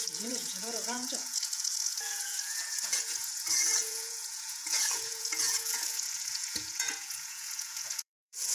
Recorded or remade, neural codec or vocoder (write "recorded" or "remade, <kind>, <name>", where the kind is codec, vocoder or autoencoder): remade, vocoder, Vocos